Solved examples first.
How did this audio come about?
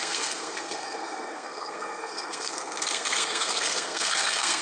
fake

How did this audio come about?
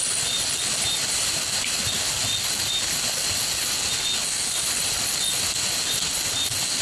real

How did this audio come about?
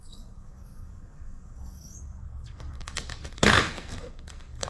fake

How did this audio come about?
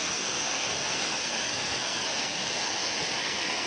fake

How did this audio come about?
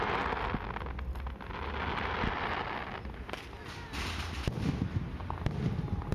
real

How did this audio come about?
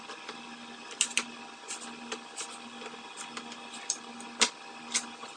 real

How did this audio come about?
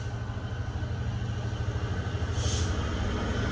real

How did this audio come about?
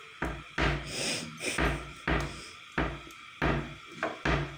real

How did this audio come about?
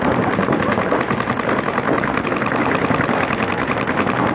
real